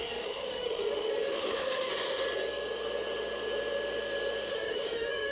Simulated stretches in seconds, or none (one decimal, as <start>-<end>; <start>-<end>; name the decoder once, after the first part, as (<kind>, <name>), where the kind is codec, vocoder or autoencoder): 0.0-1.9 (autoencoder, DAC-VAE); 4.5-5.3